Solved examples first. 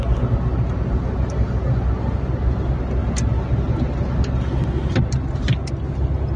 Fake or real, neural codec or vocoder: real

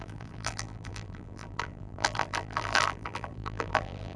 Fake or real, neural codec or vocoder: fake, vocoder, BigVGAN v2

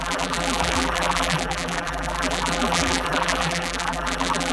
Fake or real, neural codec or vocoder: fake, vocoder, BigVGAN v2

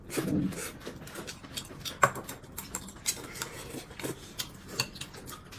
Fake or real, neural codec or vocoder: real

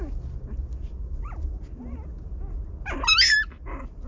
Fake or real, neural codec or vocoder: real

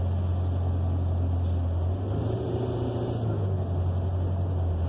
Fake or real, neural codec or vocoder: real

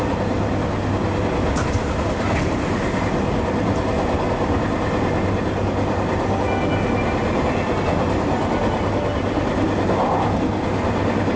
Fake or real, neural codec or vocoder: real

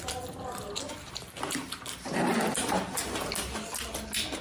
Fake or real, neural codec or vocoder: real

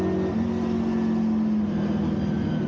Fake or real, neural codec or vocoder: real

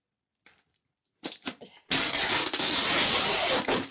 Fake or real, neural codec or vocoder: real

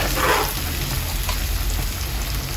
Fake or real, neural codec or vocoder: real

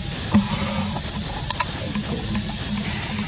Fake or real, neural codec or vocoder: fake, vocoder, BigVGAN v2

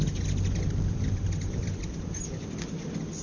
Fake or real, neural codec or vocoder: real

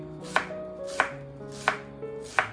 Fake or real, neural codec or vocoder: real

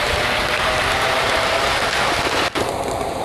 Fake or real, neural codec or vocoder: fake, vocoder, BigVGAN v2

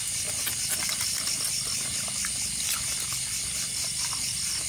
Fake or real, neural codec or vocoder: real